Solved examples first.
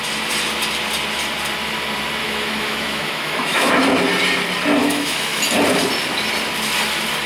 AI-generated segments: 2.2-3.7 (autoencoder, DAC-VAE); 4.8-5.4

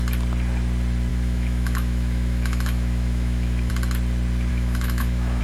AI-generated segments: 1.1-3.7 (autoencoder, DAC-VAE); 4.5-5.4